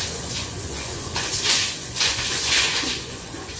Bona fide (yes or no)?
no